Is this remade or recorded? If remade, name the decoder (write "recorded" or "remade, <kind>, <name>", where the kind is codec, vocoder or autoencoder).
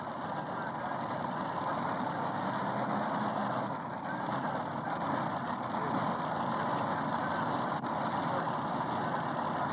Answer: recorded